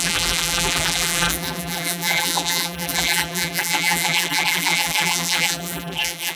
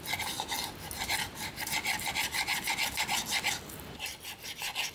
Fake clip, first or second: first